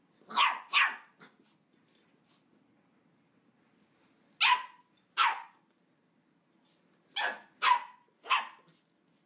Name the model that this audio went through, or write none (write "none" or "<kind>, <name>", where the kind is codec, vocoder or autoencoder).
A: none